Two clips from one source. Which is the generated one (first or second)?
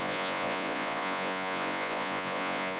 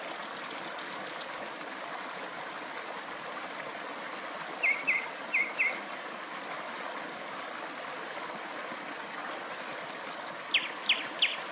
first